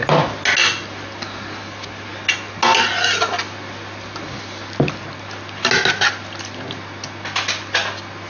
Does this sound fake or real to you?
real